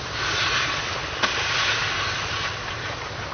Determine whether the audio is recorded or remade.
recorded